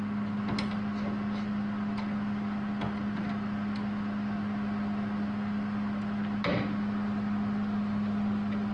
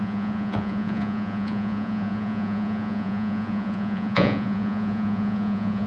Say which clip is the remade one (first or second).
second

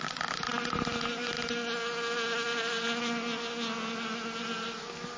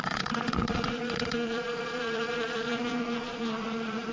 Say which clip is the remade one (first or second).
second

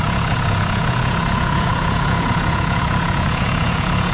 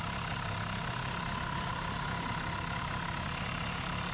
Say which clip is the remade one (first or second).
first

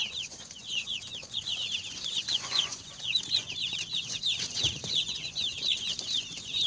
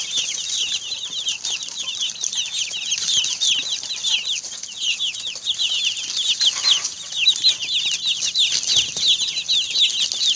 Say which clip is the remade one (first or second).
first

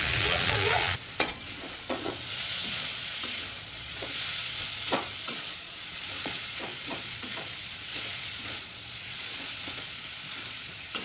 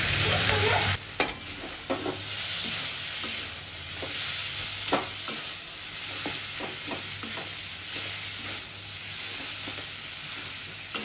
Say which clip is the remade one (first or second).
first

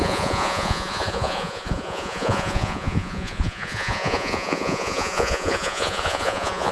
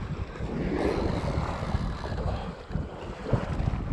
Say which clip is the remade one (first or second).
first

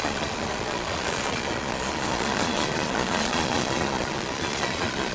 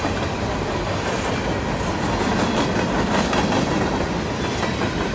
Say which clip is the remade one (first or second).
first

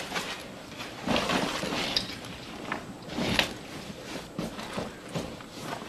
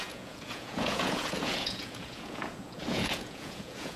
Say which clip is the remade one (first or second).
second